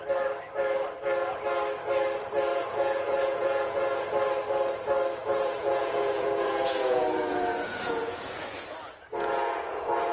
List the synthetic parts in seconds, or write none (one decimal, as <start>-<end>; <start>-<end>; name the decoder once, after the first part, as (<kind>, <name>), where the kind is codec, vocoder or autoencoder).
2.5-4.1 (vocoder, Vocos); 5.2-10.1